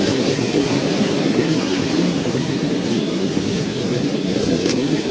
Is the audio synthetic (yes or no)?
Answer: yes